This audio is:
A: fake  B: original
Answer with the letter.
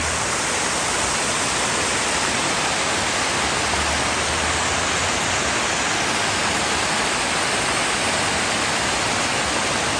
B